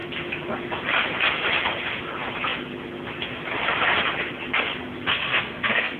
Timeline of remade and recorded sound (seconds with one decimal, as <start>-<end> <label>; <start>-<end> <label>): 0.0-5.1 recorded; 5.1-6.0 remade